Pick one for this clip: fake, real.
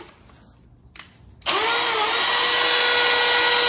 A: real